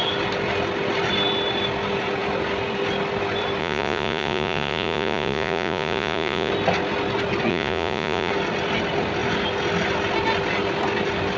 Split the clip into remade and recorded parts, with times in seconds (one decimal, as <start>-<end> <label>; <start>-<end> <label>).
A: 0.0-3.6 recorded; 3.6-6.5 remade; 6.5-7.5 recorded; 7.5-8.3 remade; 8.3-11.4 recorded